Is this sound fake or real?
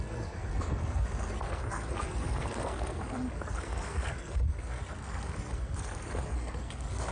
fake